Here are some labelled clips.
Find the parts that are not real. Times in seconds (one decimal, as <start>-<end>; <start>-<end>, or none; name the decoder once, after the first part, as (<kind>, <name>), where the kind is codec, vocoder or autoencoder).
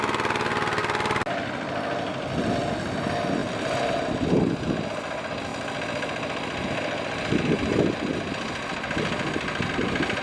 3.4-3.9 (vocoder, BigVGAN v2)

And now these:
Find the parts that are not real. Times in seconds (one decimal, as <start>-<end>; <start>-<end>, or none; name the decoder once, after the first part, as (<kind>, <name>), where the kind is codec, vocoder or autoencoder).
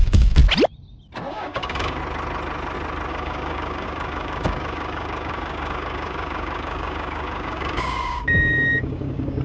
0.0-0.4 (codec, DAC); 1.3-2.0; 3.1-9.4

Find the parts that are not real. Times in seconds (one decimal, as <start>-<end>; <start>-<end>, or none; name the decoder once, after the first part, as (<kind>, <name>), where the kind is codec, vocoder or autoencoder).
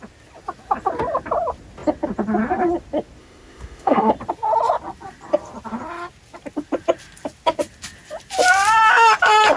3.2-4.1 (autoencoder, DAC-VAE)